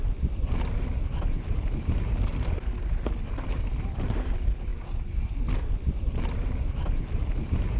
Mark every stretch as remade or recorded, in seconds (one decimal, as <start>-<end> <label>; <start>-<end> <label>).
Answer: 0.0-7.8 recorded